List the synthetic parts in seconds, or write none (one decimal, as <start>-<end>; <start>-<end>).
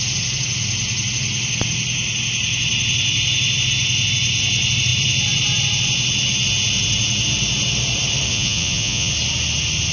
8.3-9.1